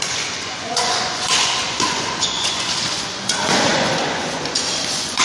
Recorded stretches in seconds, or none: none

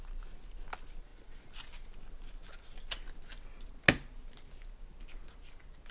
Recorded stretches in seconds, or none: 0.0-5.9

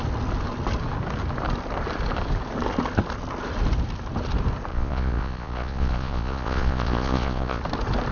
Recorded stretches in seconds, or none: 0.0-4.7; 7.6-8.1

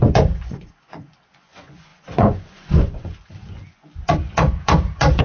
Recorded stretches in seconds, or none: none